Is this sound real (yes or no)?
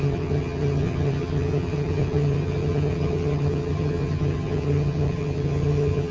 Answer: no